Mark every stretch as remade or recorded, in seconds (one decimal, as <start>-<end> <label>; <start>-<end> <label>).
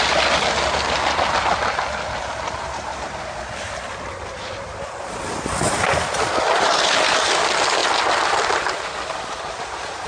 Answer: 0.0-10.1 recorded